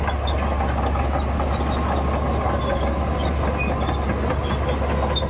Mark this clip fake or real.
real